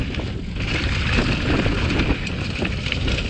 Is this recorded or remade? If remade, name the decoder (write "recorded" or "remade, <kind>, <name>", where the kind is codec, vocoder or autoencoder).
recorded